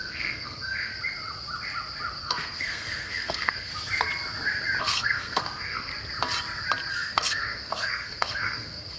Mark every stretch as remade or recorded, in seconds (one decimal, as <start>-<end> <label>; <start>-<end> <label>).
0.0-0.9 remade; 0.9-2.2 recorded; 2.2-3.7 remade; 3.7-4.8 recorded; 4.8-5.9 remade; 5.9-6.9 recorded; 6.9-9.0 remade